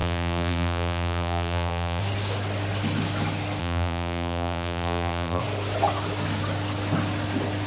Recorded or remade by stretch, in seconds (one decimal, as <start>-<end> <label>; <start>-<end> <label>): 0.0-2.0 remade; 2.0-3.6 recorded; 3.6-5.4 remade; 5.4-7.7 recorded